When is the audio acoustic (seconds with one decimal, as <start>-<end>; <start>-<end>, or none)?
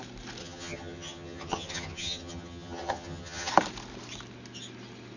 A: 0.0-0.4; 3.5-5.2